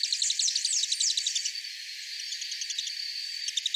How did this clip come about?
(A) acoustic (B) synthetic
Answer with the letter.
A